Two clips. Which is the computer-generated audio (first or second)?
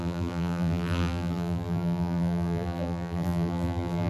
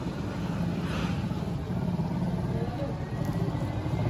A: first